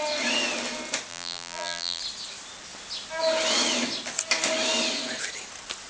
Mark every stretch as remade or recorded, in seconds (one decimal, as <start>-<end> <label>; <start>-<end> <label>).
0.0-1.1 recorded; 1.1-2.0 remade; 2.0-5.9 recorded